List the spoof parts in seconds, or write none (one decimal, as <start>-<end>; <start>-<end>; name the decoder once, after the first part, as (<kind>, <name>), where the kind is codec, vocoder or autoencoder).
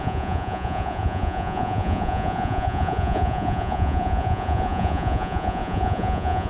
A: 0.0-6.5 (vocoder, Vocos)